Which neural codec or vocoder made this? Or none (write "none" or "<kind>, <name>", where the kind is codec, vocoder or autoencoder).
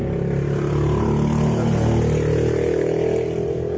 none